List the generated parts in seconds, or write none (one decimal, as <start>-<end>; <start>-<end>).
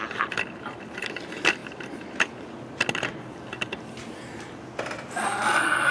none